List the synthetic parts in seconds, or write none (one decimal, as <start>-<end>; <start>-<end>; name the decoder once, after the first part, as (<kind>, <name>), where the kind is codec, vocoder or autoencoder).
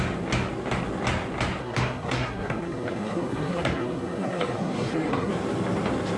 1.6-5.3 (codec, SNAC)